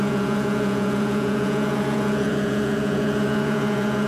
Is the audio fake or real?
fake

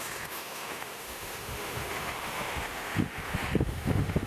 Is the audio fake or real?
fake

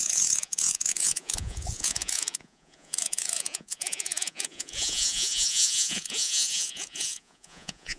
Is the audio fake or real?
fake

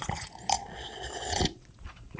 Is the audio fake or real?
fake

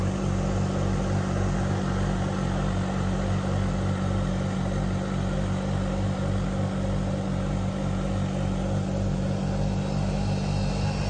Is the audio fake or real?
real